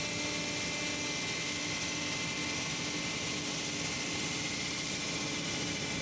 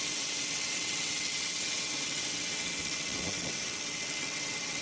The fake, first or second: second